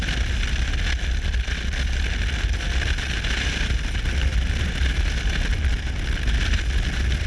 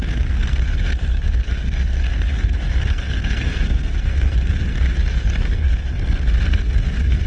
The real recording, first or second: first